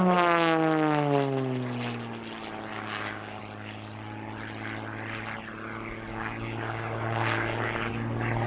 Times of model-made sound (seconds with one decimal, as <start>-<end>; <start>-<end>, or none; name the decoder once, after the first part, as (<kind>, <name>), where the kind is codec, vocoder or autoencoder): 2.7-3.4 (codec, DAC); 6.1-7.9